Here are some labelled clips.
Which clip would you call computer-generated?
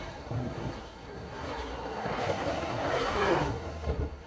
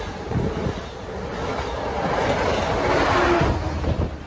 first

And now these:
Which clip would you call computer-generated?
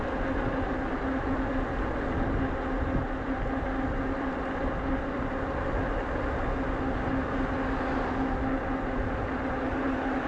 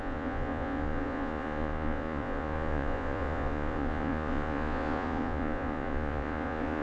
second